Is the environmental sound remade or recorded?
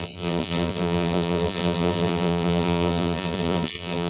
remade